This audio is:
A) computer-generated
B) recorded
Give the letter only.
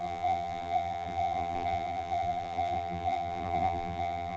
A